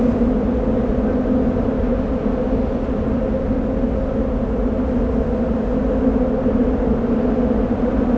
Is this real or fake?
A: real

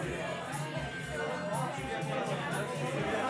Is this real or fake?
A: real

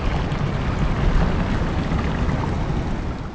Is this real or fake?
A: real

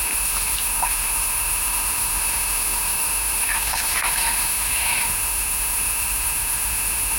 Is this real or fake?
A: fake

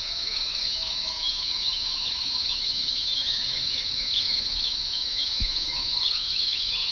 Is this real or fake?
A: fake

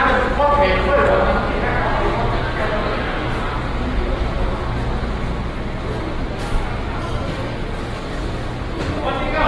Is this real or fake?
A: real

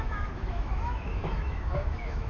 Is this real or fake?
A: fake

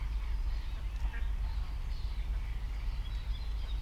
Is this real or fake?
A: real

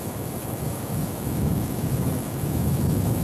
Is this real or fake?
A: fake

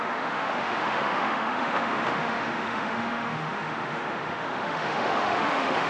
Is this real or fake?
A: fake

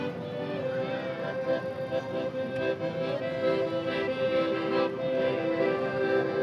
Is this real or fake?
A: real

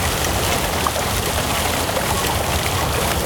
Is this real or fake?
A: real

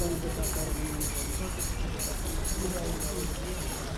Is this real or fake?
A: real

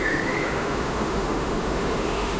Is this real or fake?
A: fake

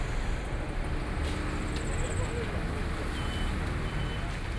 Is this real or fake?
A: real